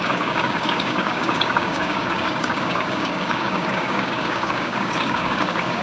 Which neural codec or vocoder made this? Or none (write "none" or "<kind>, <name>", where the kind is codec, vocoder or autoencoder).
codec, DAC